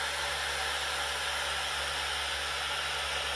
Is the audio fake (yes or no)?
no